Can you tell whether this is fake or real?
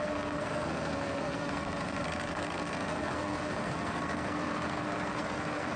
fake